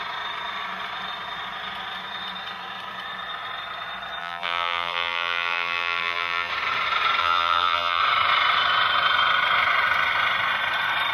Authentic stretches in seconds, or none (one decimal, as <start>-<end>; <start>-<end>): 0.0-4.2; 6.5-7.2; 8.0-11.1